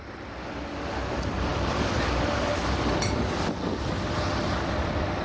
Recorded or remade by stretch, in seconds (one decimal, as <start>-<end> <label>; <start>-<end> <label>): 0.0-5.2 recorded